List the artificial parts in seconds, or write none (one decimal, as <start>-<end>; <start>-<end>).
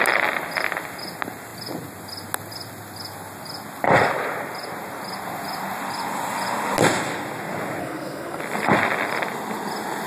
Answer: 7.8-8.4